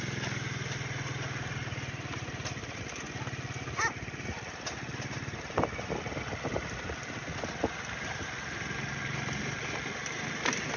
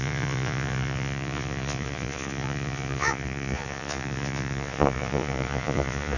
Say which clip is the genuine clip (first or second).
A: first